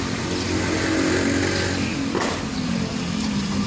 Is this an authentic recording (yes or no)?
yes